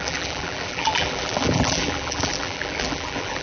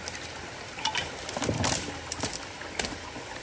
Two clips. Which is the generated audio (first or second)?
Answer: first